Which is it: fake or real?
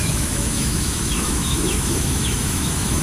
fake